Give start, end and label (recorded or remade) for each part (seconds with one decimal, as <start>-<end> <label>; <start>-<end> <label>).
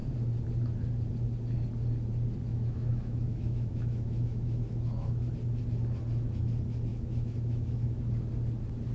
0.0-2.5 recorded; 2.5-5.3 remade; 5.3-6.9 recorded; 6.9-8.0 remade; 8.0-8.9 recorded